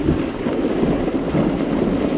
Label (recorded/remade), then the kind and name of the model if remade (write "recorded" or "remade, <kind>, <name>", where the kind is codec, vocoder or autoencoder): recorded